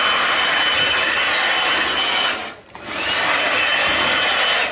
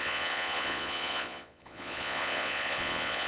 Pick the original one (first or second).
first